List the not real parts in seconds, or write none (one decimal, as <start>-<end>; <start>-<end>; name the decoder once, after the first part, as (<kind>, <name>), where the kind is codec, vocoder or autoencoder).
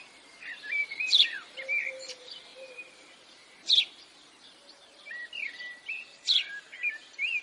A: 0.8-2.1 (vocoder, BigVGAN v2); 2.5-6.9